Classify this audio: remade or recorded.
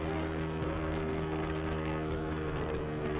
remade